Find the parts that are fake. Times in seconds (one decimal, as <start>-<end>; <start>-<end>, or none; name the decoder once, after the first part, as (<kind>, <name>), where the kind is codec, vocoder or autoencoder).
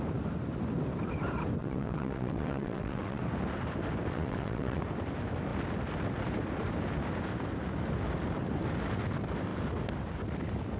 1.6-3.2 (vocoder, WaveNeXt); 4.1-4.8